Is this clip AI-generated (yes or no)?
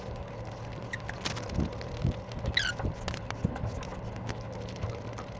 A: no